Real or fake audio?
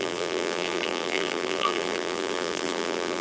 fake